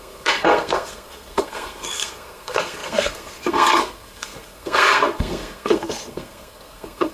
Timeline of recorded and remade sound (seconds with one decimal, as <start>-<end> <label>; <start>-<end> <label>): 0.0-7.1 remade